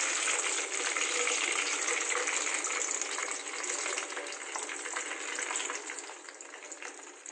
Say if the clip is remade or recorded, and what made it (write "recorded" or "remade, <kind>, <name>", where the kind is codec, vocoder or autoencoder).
recorded